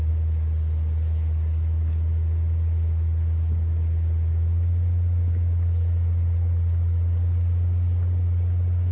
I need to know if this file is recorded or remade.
recorded